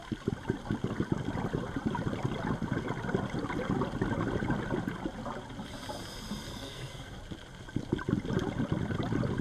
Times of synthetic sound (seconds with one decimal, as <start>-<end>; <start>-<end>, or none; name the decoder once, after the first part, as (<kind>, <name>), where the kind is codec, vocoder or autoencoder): 6.5-7.2 (codec, SNAC)